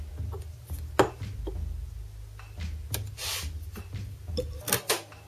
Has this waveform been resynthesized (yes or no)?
no